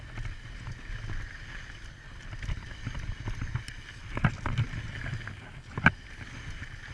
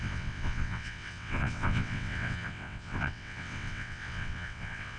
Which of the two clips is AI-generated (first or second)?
second